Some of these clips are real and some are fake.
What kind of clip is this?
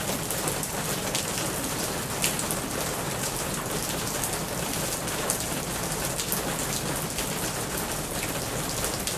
real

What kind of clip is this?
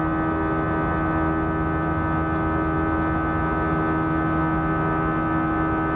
real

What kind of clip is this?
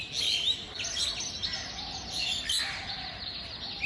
real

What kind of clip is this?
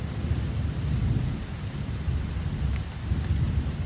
real